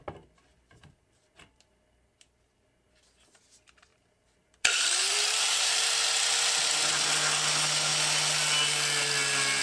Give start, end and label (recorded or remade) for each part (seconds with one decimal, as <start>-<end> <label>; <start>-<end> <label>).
0.0-3.9 recorded; 3.9-5.9 remade; 5.9-9.6 recorded